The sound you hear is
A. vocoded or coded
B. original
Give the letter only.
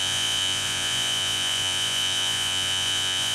A